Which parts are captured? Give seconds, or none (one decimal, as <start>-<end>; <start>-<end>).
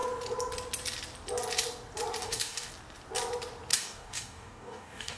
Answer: 0.0-2.2; 2.7-3.7